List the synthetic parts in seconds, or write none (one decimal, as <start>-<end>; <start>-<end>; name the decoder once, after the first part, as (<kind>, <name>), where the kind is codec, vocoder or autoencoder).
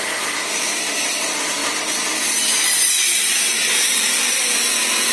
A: 0.0-1.6 (vocoder, BigVGAN v2); 2.9-5.1